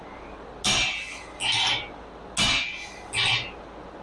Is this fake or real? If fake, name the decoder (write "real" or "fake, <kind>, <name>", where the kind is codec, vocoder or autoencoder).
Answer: real